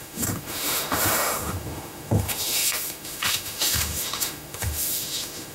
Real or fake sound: fake